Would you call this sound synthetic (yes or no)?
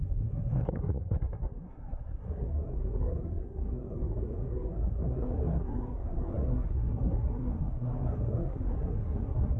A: yes